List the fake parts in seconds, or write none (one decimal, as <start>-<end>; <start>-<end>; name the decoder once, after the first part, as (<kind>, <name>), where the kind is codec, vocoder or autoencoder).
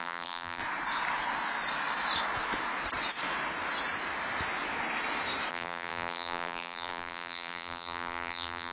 0.0-0.6 (vocoder, BigVGAN v2); 5.5-8.7